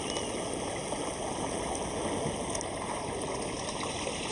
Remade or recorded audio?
recorded